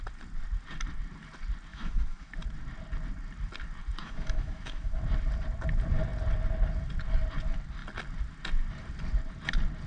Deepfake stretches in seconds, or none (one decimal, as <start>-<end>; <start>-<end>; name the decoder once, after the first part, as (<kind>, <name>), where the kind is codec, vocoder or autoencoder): 1.7-2.3 (autoencoder, DAC-VAE); 4.0-5.0